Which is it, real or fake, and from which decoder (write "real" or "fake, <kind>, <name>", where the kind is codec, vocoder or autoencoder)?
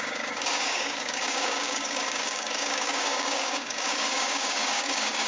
fake, codec, DAC